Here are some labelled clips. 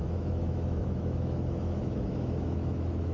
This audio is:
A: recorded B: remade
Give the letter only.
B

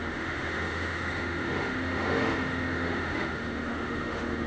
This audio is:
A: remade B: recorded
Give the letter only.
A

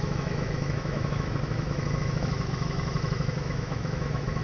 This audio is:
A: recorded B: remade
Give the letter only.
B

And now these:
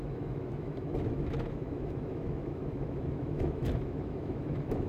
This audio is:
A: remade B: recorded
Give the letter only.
A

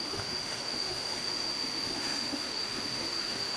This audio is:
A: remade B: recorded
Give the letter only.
A